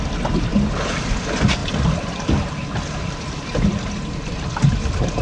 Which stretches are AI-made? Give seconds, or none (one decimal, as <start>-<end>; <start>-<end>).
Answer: none